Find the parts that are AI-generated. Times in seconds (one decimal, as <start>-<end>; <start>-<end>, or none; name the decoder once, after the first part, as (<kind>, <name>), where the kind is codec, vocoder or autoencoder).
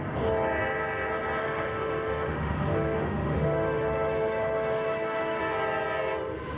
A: 1.4-5.4 (autoencoder, DAC-VAE)